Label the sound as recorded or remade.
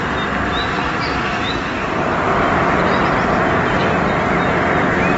recorded